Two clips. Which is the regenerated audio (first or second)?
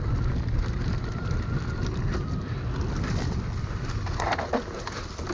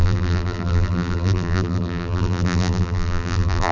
second